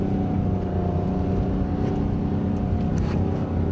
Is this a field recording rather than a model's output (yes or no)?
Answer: yes